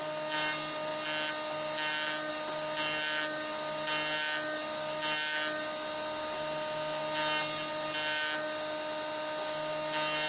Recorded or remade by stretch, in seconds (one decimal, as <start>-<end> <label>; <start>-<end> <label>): 0.0-10.3 recorded